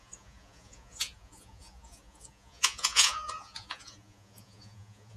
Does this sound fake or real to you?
fake